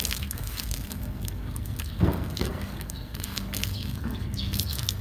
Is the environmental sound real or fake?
fake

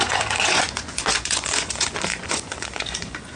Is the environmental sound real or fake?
fake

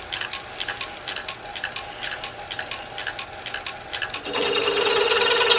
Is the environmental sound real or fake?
real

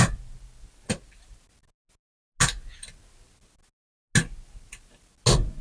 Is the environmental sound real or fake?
real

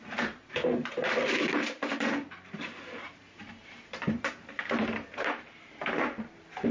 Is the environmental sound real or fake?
fake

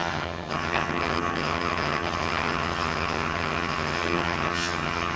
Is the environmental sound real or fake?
fake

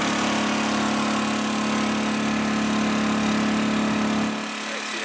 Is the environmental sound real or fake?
real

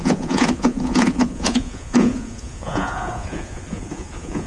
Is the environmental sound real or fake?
fake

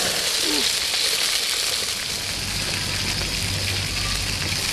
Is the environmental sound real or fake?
real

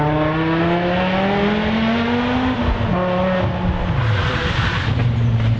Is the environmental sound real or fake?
real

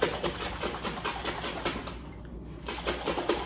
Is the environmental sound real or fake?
real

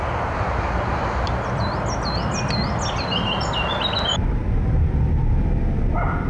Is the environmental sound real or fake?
real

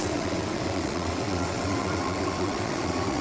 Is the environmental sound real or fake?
fake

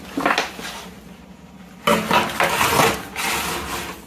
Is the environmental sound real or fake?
real